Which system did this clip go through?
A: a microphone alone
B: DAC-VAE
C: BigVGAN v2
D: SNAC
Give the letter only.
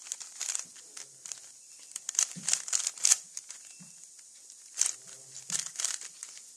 C